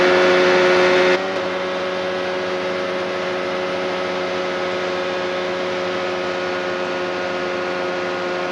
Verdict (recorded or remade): recorded